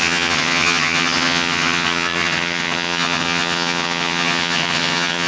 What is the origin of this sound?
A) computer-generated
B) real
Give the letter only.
A